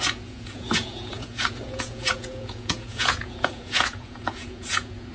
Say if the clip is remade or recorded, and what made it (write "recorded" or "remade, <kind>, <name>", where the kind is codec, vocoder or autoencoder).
remade, vocoder, Vocos